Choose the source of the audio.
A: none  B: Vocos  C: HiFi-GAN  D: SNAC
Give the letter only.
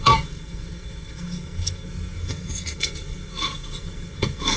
D